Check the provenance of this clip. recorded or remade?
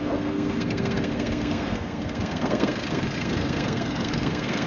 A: remade